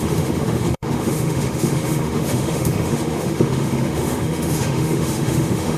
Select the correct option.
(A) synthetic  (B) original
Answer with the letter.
A